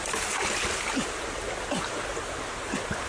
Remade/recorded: recorded